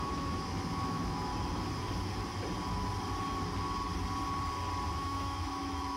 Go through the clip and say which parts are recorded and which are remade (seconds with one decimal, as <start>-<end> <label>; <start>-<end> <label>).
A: 0.0-1.3 remade; 1.3-4.9 recorded; 4.9-6.0 remade